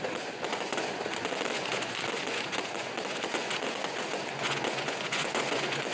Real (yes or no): no